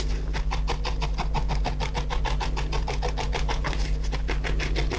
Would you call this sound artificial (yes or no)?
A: no